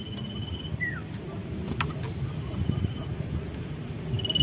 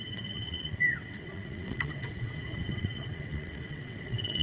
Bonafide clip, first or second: first